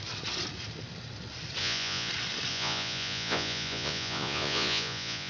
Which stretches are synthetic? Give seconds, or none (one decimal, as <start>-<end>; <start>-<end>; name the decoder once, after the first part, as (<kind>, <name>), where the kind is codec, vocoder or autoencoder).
1.6-2.1 (vocoder, Vocos); 2.5-5.3